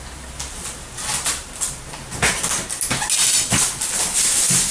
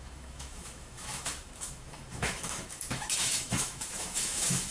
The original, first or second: first